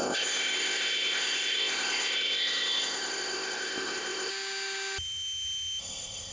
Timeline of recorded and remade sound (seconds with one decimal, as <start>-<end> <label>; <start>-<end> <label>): 0.0-4.3 remade; 4.3-5.8 recorded; 5.8-6.3 remade

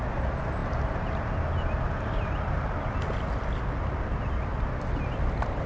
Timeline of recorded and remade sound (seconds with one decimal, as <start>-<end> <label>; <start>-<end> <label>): 0.0-5.7 recorded

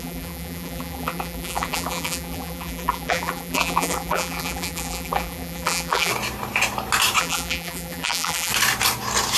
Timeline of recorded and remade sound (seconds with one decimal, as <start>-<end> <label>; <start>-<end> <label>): 0.0-6.1 remade; 6.1-7.2 recorded; 7.2-8.5 remade; 8.5-9.4 recorded